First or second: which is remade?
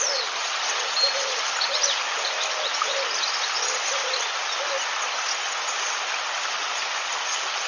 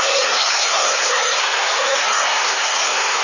second